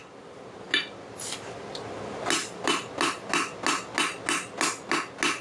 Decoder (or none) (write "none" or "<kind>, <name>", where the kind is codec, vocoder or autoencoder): none